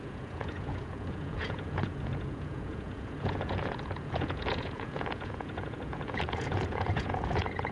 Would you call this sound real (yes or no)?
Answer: no